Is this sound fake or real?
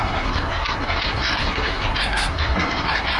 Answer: fake